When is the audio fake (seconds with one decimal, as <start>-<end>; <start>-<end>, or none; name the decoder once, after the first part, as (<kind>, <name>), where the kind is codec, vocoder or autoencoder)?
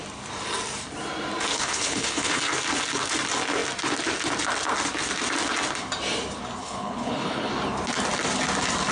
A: 1.5-2.4 (codec, HILCodec); 6.6-7.5